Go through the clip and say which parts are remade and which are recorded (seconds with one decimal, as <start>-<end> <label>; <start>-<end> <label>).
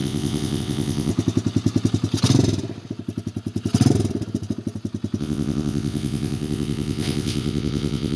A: 0.0-1.1 remade; 1.1-5.2 recorded; 5.2-8.2 remade